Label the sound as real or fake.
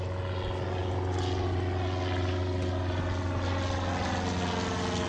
real